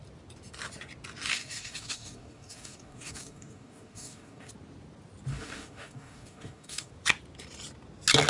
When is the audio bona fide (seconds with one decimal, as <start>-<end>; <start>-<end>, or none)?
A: 0.0-1.3; 4.5-5.3; 6.9-8.3